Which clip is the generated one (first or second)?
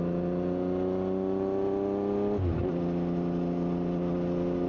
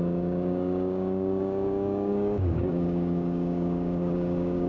second